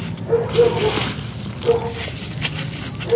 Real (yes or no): yes